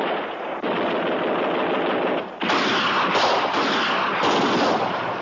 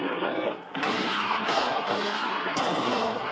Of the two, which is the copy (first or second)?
second